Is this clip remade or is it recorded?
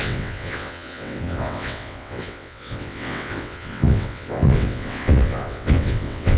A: remade